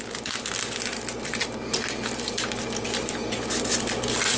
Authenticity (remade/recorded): recorded